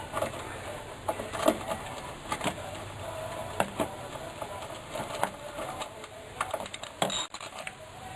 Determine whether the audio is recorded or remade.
recorded